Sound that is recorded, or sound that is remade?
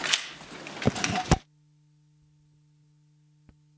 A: recorded